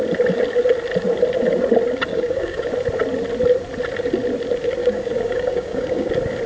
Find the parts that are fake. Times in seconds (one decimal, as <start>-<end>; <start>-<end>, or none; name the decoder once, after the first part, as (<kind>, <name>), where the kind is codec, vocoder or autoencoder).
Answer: 2.1-2.7 (codec, DAC); 4.8-6.1